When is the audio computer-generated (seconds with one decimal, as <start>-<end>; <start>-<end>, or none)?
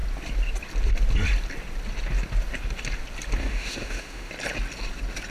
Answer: 3.4-4.3